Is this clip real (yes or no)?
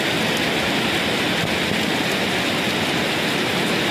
yes